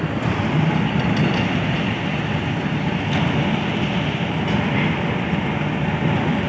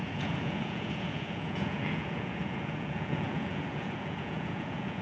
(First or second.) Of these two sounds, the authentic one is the first